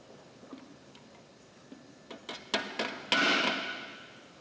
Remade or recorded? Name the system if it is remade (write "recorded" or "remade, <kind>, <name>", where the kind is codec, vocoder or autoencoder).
recorded